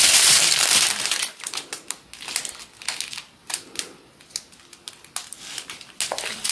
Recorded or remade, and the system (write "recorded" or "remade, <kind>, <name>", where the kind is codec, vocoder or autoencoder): recorded